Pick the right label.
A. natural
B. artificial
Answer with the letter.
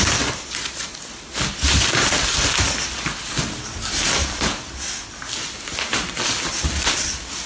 A